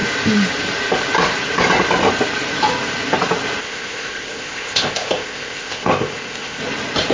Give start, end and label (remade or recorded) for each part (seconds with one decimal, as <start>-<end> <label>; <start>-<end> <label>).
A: 0.0-3.6 recorded; 3.6-6.6 remade; 6.6-7.1 recorded